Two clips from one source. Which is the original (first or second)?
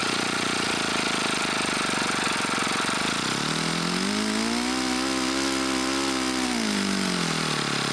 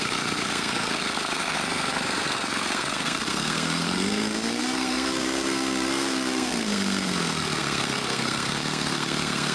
first